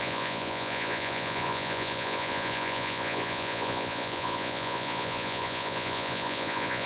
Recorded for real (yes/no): no